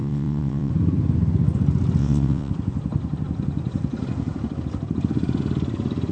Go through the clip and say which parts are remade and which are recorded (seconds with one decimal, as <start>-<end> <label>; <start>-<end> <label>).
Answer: 0.0-0.7 remade; 0.7-2.0 recorded; 2.0-2.5 remade; 2.5-6.1 recorded